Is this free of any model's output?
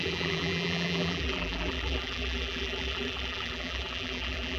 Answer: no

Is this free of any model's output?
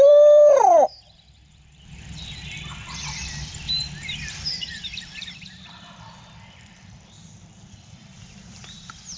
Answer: no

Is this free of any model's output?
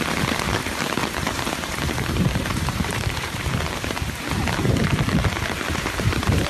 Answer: no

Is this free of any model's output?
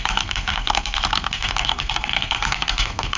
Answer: no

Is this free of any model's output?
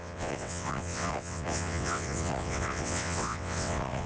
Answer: no